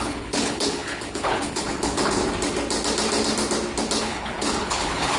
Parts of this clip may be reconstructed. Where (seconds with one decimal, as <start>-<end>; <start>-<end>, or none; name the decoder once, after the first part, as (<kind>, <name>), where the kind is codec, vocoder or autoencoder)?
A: 0.0-2.2 (codec, HILCodec); 4.0-5.2